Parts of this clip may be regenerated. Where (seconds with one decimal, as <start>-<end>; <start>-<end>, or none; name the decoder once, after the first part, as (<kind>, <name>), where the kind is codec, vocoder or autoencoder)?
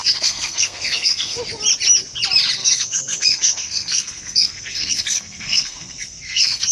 0.0-1.4 (codec, SNAC); 2.6-6.7